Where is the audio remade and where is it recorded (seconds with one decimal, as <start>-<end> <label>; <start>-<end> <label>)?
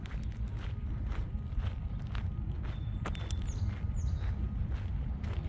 0.0-5.5 recorded